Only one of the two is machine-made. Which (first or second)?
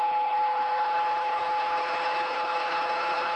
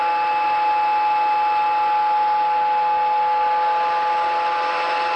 first